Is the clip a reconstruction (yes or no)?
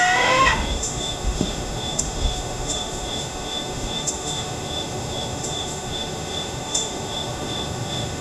yes